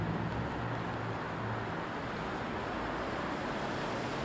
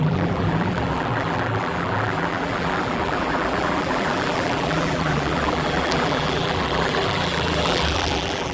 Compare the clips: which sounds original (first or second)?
first